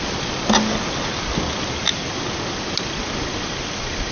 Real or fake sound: real